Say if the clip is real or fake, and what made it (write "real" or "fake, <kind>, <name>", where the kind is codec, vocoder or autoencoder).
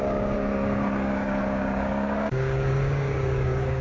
fake, codec, DAC